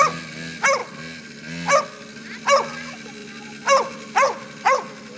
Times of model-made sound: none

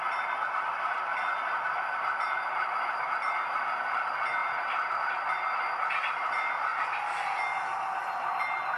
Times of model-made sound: none

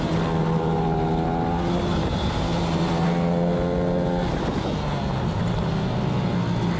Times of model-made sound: none

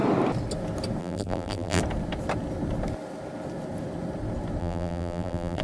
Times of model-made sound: 1.0-1.8 (vocoder, BigVGAN v2); 4.6-5.6